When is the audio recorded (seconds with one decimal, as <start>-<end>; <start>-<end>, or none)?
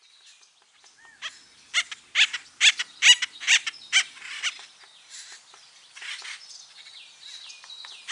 0.0-2.4; 6.2-8.1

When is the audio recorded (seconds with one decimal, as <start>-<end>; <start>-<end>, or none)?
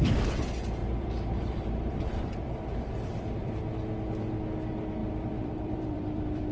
0.0-0.8; 3.6-5.0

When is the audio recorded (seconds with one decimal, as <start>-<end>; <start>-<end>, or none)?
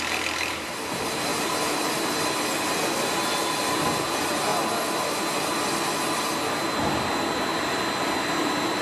0.0-1.3; 1.8-8.8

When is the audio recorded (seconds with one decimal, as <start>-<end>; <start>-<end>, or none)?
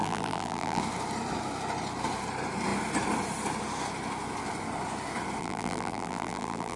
0.8-5.4